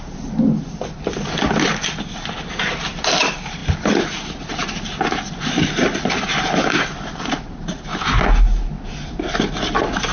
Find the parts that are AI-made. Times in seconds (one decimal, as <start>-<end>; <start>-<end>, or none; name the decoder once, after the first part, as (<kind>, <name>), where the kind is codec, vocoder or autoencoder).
none